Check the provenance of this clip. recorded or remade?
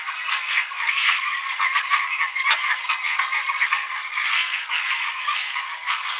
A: remade